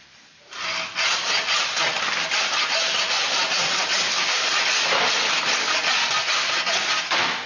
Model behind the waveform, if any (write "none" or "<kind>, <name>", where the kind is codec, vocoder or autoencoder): none